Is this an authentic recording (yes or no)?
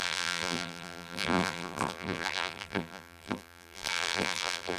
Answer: no